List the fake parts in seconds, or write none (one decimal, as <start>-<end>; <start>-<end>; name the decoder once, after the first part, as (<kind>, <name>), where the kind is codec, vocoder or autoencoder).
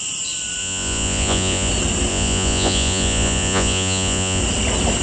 0.6-1.7 (vocoder, Vocos); 2.1-4.4